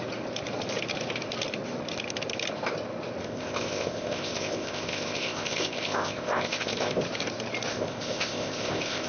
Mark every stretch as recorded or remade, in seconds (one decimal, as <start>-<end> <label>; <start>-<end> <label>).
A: 0.0-3.2 recorded; 3.2-7.0 remade; 7.0-7.7 recorded; 7.7-9.1 remade